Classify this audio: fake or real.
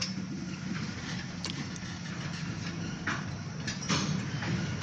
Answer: real